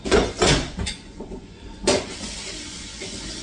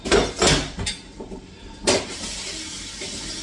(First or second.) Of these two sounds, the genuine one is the second